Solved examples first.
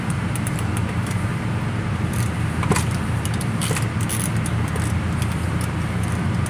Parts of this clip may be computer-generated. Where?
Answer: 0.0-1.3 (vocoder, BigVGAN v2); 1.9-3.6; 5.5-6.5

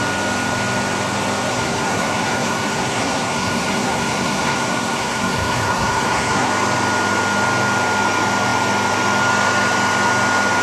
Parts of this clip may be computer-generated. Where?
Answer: 1.5-6.5 (codec, SNAC)